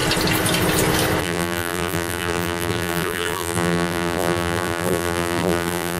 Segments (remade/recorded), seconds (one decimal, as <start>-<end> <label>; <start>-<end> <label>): 0.0-1.2 recorded; 1.2-6.0 remade